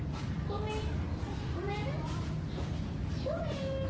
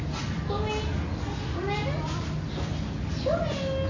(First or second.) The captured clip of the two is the second